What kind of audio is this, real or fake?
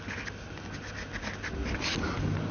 real